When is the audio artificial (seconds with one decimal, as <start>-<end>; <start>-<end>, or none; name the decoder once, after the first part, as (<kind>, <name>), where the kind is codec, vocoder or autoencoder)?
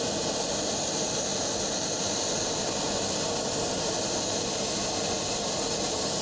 none